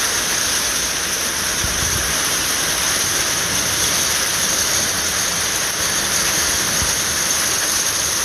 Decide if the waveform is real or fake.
real